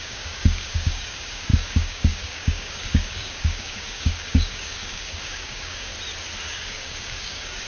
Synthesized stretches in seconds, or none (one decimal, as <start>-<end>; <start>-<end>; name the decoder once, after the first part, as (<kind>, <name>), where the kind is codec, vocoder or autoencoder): 0.0-5.9 (codec, DAC); 6.5-7.7